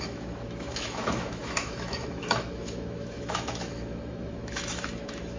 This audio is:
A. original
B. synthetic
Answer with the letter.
B